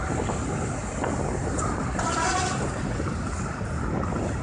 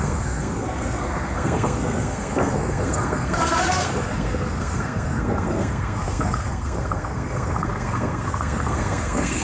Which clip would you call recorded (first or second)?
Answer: first